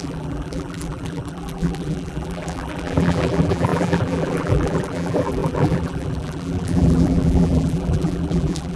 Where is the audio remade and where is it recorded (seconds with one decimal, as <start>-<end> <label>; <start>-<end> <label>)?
0.0-8.8 remade